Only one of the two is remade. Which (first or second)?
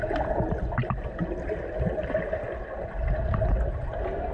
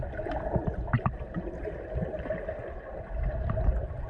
second